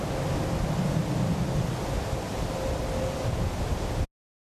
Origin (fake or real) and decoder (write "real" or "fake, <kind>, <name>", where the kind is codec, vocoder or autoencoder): real